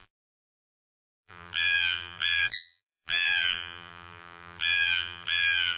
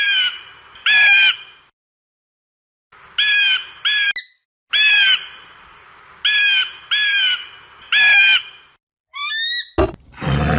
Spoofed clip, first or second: first